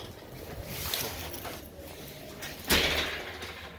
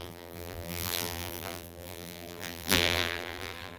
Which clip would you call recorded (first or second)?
first